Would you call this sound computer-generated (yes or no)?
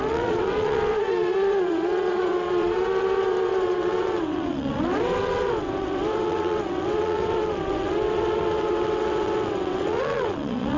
yes